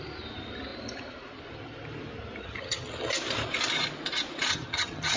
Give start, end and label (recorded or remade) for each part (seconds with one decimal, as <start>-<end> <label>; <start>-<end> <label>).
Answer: 0.0-2.4 recorded; 2.4-3.1 remade; 3.1-4.5 recorded; 4.5-5.2 remade